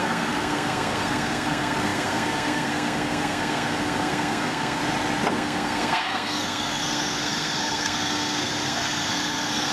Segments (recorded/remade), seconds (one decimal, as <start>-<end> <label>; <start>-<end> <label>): 0.0-4.8 remade; 4.8-5.3 recorded; 5.3-9.7 remade